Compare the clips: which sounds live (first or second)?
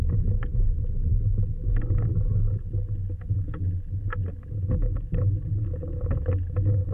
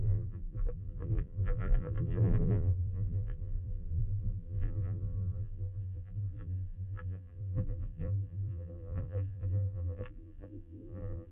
first